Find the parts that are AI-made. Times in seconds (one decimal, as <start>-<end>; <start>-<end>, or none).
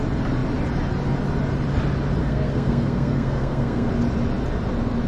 2.2-3.9